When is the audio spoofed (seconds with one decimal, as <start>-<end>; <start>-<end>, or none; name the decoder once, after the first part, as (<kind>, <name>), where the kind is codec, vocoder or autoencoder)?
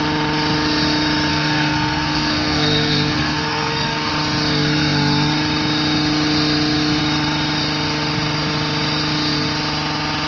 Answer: 1.3-4.1 (codec, SNAC)